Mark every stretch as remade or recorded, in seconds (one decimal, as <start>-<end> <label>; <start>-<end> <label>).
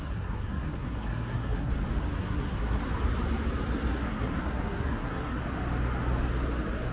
0.0-1.7 remade; 1.7-2.2 recorded; 2.2-2.8 remade; 2.8-3.9 recorded; 3.9-5.4 remade; 5.4-6.9 recorded